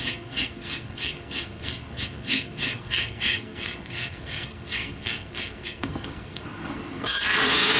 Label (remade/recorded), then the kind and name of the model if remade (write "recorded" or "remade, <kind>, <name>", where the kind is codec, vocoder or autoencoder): remade, codec, SNAC